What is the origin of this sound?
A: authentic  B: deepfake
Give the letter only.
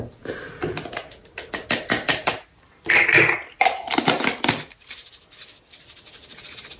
A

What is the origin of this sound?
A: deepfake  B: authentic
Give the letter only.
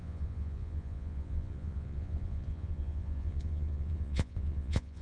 A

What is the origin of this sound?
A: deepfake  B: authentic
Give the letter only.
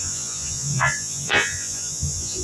A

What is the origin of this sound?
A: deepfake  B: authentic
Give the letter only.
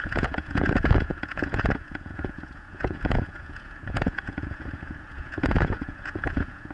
A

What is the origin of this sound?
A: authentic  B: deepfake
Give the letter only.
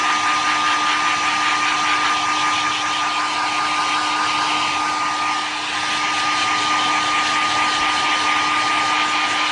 A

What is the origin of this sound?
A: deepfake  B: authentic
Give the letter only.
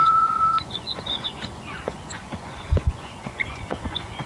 A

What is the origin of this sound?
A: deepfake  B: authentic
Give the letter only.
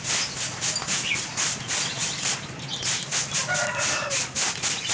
B